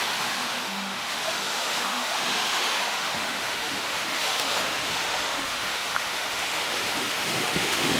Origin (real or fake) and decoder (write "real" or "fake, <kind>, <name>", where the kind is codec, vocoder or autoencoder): fake, autoencoder, DAC-VAE